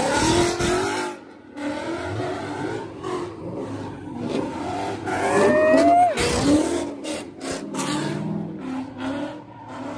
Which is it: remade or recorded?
recorded